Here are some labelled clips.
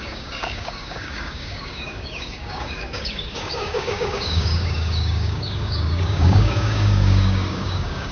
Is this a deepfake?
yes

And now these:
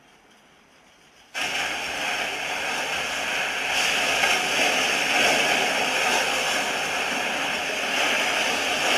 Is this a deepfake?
no